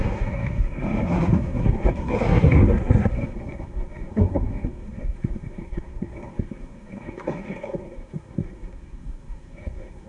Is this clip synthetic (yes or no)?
yes